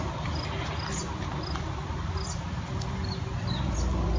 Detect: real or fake real